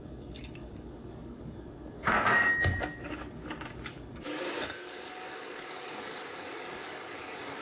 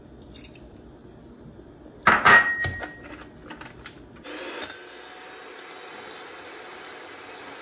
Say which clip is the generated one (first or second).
first